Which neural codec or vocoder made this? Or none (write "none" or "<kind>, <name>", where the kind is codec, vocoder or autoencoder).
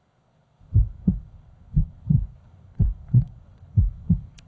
codec, SNAC